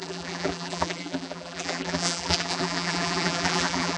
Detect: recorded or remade remade